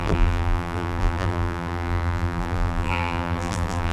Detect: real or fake fake